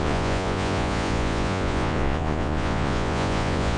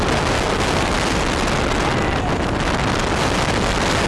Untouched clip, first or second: second